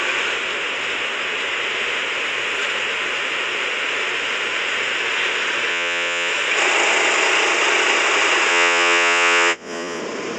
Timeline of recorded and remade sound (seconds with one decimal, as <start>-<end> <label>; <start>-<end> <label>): 0.0-5.7 recorded; 5.7-6.3 remade; 6.3-8.5 recorded; 8.5-10.0 remade; 10.0-10.4 recorded